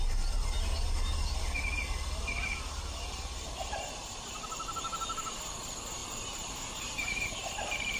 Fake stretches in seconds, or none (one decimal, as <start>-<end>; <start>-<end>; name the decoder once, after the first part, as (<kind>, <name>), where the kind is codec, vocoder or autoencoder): 6.0-6.7 (vocoder, BigVGAN v2)